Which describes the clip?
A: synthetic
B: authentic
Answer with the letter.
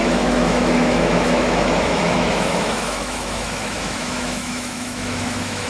A